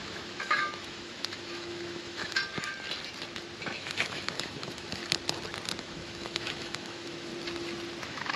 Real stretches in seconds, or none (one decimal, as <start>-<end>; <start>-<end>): 2.4-3.6; 5.0-5.8; 7.3-8.0